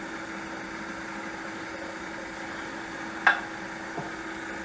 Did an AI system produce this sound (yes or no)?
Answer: no